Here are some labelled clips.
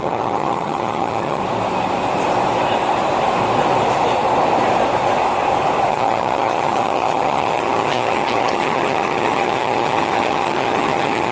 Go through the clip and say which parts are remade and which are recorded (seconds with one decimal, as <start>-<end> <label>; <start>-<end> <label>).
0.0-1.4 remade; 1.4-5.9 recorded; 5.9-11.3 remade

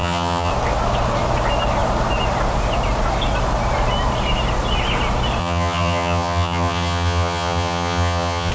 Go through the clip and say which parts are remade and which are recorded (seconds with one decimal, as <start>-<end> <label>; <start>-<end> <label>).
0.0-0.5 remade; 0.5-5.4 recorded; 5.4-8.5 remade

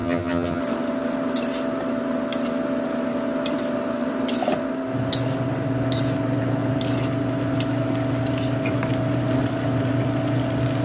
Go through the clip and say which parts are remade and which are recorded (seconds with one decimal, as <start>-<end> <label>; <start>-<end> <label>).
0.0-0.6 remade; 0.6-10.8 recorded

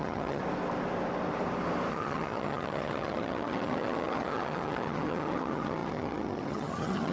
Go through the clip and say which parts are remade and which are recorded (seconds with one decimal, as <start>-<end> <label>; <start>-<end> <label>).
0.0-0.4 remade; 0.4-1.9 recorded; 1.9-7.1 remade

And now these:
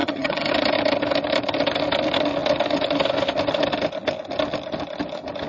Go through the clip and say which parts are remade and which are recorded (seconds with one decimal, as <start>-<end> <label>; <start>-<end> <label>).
0.0-0.5 remade; 0.5-5.5 recorded